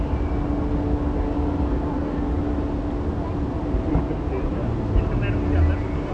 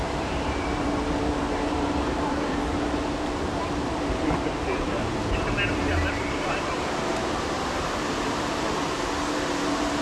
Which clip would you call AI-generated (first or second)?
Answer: second